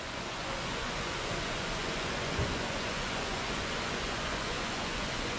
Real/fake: fake